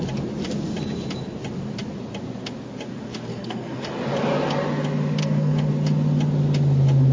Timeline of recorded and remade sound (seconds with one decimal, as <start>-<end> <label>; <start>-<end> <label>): 0.0-3.3 recorded; 3.3-3.8 remade; 3.8-5.2 recorded; 5.2-5.7 remade; 5.7-7.1 recorded